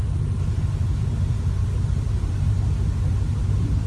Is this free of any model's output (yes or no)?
yes